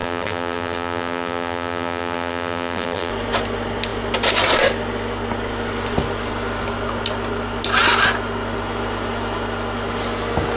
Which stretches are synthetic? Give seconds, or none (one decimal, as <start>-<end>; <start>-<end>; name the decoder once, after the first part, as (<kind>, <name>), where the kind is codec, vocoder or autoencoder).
0.0-3.1 (vocoder, BigVGAN v2)